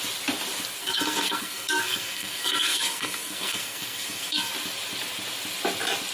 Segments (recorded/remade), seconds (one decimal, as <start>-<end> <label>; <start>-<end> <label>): 0.0-0.8 recorded; 0.8-4.5 remade; 4.5-6.1 recorded